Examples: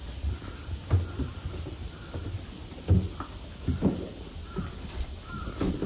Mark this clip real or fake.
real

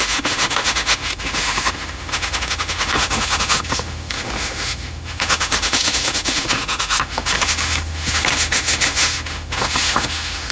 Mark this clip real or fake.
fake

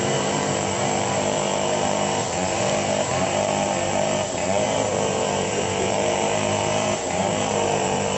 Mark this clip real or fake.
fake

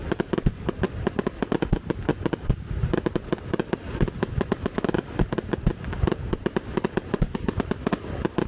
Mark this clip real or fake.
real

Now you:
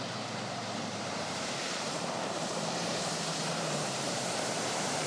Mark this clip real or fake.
fake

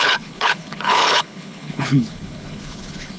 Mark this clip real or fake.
fake